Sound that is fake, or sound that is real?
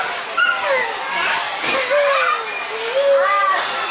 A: real